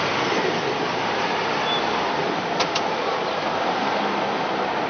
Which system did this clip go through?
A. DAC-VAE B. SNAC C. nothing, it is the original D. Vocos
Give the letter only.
C